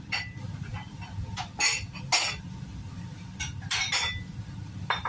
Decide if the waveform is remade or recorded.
recorded